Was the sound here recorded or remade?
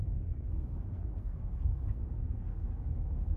remade